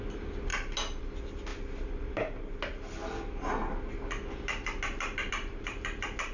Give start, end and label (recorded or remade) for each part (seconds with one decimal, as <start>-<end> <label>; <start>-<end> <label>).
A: 0.0-6.3 recorded